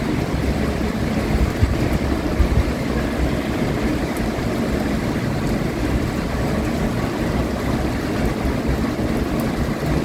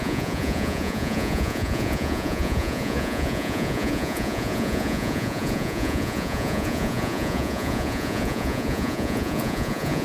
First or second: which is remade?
second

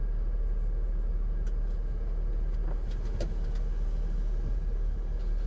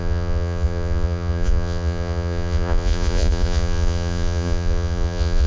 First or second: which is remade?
second